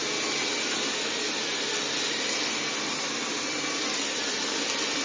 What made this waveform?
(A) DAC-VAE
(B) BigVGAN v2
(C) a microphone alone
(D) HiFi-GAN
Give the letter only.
C